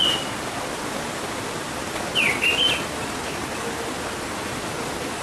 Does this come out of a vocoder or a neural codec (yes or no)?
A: no